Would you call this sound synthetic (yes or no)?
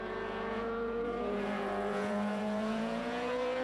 yes